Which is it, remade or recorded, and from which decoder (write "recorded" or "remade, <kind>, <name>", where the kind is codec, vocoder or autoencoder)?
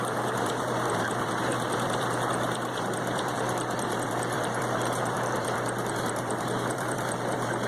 remade, vocoder, BigVGAN v2